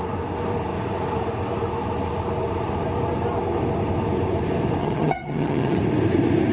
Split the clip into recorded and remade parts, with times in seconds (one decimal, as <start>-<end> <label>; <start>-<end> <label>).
0.0-4.8 recorded; 4.8-5.8 remade; 5.8-6.5 recorded